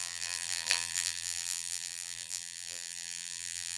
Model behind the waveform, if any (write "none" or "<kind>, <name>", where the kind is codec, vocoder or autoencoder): vocoder, BigVGAN v2